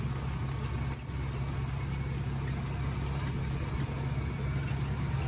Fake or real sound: real